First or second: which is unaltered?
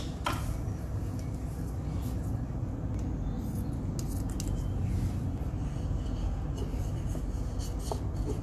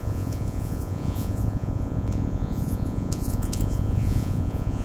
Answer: first